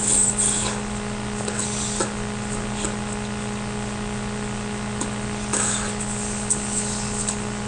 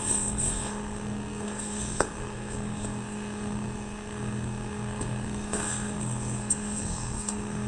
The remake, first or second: second